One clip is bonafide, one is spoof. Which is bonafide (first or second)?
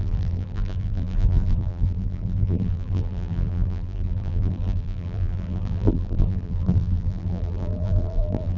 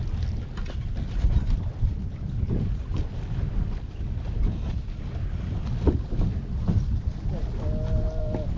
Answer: second